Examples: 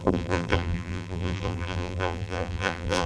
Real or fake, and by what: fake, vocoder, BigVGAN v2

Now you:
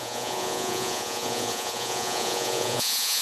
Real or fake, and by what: fake, vocoder, Vocos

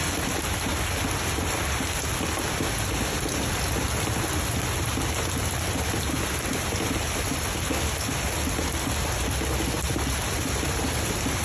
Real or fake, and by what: real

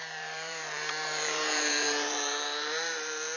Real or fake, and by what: fake, vocoder, BigVGAN v2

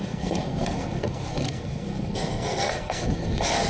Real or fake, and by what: fake, codec, SNAC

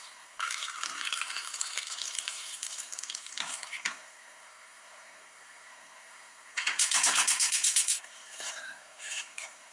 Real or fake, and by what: fake, codec, SNAC